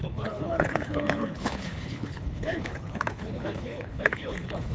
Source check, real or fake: fake